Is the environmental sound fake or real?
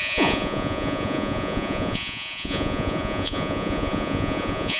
fake